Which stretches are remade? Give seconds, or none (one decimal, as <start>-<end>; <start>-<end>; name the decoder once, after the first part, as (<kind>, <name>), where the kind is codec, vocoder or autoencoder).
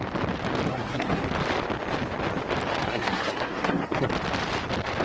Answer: 0.7-1.2 (codec, SNAC); 2.8-4.1